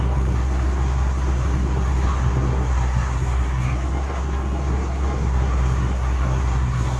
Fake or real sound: fake